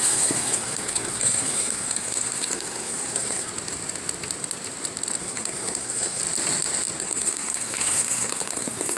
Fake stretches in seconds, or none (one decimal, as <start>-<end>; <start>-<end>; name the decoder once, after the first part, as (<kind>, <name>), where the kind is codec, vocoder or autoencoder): 0.0-3.5 (codec, SNAC); 5.2-6.2; 7.0-9.0

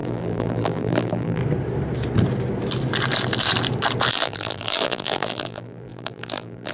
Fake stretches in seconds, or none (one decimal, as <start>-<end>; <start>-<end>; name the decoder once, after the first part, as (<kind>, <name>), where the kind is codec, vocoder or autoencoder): 0.0-1.4 (vocoder, BigVGAN v2); 4.1-6.7

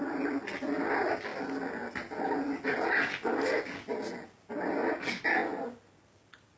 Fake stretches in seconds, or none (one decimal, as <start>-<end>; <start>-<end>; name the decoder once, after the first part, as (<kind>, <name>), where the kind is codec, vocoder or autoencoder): none

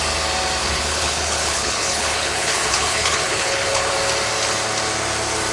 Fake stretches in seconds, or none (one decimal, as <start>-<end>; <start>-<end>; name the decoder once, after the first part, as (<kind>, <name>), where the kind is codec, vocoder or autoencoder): 0.6-3.9 (codec, HILCodec)

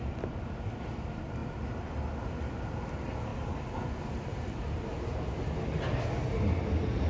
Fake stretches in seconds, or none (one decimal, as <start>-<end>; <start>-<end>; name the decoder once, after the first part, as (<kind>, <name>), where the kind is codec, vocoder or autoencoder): none